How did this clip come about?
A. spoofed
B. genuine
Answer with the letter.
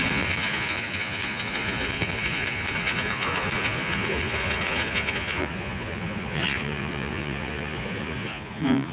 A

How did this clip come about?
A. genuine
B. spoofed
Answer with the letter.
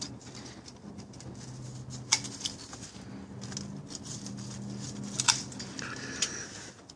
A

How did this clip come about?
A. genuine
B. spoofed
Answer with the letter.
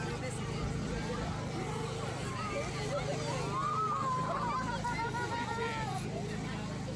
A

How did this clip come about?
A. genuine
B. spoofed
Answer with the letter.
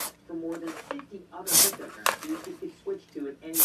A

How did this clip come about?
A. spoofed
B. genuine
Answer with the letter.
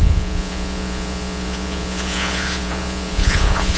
A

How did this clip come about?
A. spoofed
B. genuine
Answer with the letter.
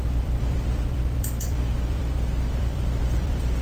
A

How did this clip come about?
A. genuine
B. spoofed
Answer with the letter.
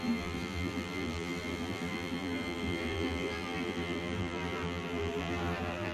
B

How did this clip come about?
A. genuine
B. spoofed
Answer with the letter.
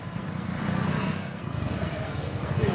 B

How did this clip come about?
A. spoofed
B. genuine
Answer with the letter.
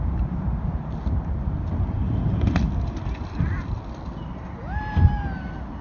B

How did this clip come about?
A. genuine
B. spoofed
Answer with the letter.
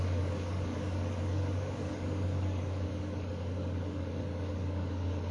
B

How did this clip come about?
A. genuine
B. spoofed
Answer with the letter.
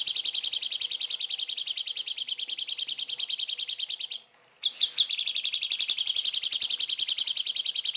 A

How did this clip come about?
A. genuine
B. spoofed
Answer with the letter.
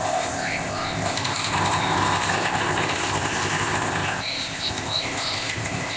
B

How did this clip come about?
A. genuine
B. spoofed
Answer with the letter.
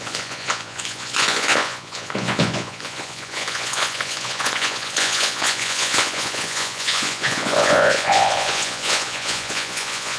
B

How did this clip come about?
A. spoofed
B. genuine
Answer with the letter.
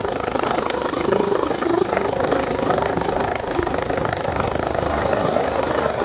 A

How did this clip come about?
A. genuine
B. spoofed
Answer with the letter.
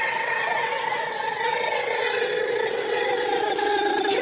B